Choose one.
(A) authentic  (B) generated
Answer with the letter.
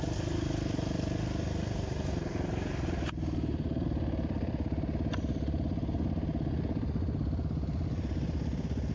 A